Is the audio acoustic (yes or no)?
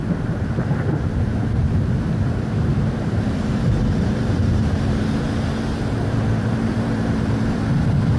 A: no